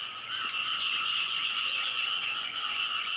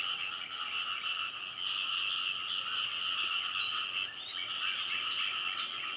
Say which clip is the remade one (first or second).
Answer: first